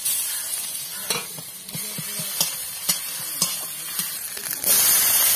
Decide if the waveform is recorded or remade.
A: recorded